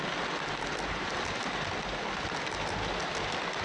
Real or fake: real